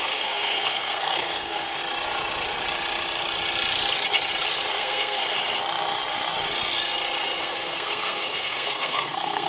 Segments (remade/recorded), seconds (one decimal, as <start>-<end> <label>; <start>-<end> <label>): 0.0-1.8 remade; 1.8-4.7 recorded; 4.7-5.2 remade; 5.2-7.4 recorded; 7.4-9.5 remade